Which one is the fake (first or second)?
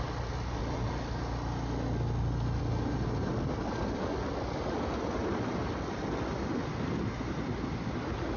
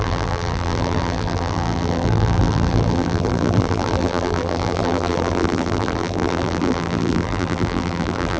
second